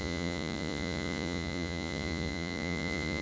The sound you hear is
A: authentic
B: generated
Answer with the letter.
B